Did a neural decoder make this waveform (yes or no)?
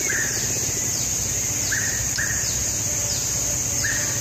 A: no